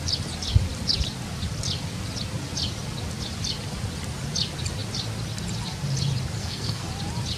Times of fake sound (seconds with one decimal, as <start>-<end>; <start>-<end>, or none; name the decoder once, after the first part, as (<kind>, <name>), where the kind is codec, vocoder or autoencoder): 6.4-6.9 (codec, SNAC)